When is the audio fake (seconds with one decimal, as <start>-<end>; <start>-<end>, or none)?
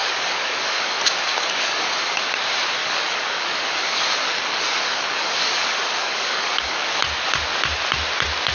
0.0-2.2; 2.8-7.0